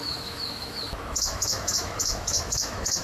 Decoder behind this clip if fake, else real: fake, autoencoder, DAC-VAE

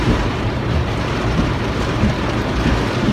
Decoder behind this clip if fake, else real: fake, vocoder, BigVGAN v2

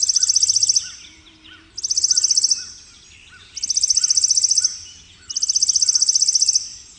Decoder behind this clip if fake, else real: real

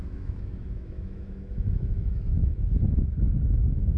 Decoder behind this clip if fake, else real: fake, autoencoder, DAC-VAE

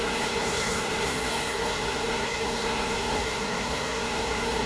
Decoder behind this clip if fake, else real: fake, codec, SNAC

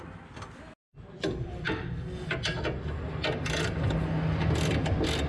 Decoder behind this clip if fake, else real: real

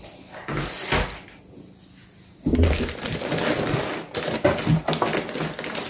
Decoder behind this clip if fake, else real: real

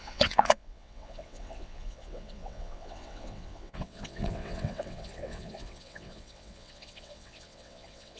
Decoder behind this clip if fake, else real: fake, vocoder, WaveNeXt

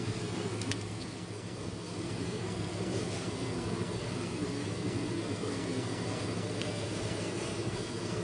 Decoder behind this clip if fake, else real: fake, codec, SNAC